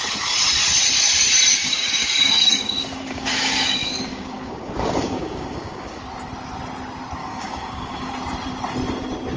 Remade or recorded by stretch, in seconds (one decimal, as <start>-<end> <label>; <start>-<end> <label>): 0.0-1.5 recorded; 1.5-6.0 remade; 6.0-7.2 recorded; 7.2-8.1 remade; 8.1-9.4 recorded